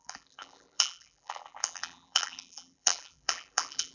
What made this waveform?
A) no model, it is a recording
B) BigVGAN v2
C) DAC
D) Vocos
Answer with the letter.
B